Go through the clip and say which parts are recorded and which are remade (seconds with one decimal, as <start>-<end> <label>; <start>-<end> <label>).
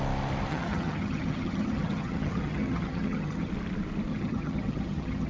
0.0-0.5 recorded; 0.5-3.5 remade; 3.5-4.1 recorded; 4.1-5.3 remade